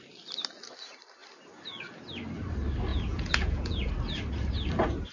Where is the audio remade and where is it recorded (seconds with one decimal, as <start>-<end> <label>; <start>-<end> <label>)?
0.0-2.9 recorded; 2.9-3.9 remade; 3.9-5.1 recorded